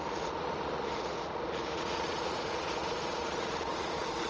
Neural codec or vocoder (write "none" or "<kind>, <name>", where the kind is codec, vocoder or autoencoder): vocoder, Vocos